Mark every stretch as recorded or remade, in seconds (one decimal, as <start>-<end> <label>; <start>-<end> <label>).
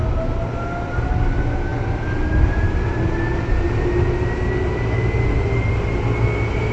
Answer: 0.0-6.7 recorded